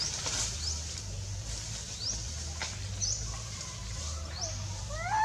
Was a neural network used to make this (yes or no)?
yes